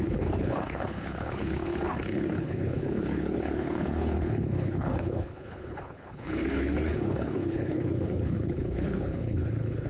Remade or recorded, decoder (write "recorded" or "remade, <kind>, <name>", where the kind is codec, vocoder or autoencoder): remade, codec, HILCodec